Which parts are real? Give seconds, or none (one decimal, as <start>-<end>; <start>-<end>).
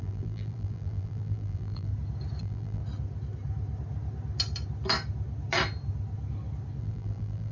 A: 1.9-2.4; 2.8-6.8